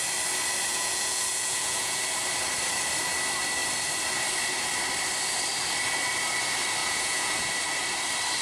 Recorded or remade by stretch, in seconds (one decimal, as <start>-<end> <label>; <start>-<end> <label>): 0.0-0.7 recorded; 0.7-2.0 remade; 2.0-6.8 recorded; 6.8-7.5 remade; 7.5-8.4 recorded